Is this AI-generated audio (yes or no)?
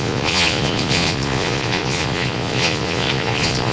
yes